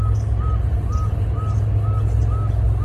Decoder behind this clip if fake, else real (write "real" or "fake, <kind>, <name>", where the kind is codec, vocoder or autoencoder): real